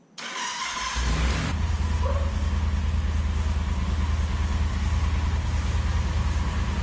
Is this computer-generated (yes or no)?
no